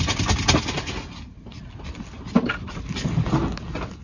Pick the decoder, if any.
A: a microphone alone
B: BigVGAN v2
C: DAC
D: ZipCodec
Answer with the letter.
A